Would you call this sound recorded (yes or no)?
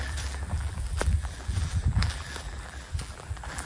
no